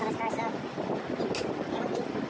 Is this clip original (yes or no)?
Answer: yes